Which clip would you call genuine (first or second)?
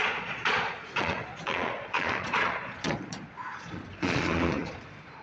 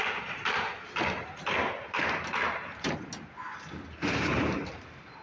second